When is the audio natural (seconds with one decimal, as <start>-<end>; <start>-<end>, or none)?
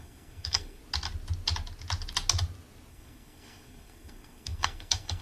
0.8-2.9